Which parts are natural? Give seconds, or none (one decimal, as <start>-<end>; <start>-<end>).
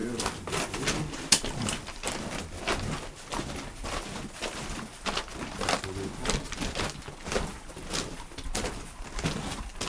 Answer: 0.0-9.9